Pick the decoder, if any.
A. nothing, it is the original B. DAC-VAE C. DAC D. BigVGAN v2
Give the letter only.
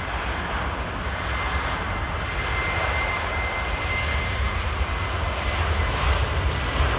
A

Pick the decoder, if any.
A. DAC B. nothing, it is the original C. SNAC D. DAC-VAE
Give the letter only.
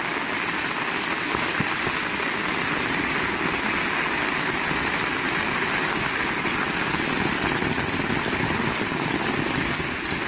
B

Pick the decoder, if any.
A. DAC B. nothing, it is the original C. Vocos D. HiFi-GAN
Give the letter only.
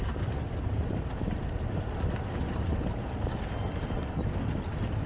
B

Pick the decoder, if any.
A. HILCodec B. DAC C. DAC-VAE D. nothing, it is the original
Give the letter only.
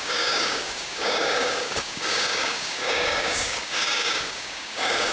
B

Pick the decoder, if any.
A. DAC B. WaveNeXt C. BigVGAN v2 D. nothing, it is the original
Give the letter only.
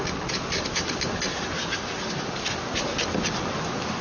D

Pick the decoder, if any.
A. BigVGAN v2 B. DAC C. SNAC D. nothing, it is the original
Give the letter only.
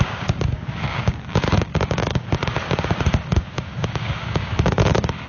B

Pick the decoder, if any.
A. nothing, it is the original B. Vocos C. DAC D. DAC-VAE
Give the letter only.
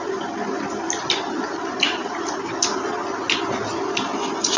A